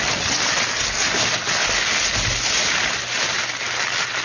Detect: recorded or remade recorded